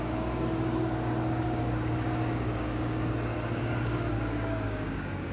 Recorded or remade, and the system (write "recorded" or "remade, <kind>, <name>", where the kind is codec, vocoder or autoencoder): remade, codec, DAC